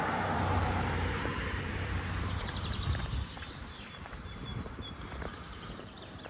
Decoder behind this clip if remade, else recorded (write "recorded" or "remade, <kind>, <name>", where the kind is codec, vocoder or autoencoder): remade, vocoder, BigVGAN v2